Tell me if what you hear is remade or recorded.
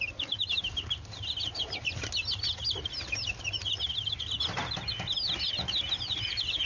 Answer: recorded